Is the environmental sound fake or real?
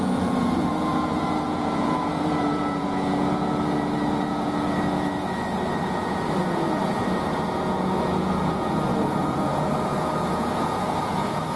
fake